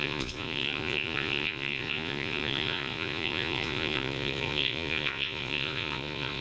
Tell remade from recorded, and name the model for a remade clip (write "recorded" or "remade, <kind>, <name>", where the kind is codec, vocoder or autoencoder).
remade, vocoder, Vocos